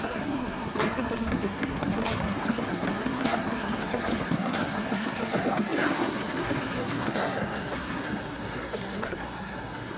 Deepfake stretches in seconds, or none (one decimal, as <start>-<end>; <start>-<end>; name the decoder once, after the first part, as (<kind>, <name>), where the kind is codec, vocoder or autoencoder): 0.0-10.0 (codec, SNAC)